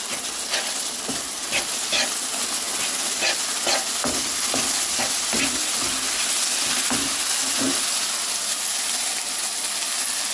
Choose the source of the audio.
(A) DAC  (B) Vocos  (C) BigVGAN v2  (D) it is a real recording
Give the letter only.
D